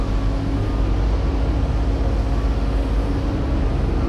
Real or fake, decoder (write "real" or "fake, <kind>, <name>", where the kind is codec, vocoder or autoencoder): real